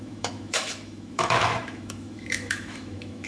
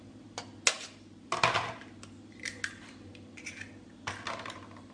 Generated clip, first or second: first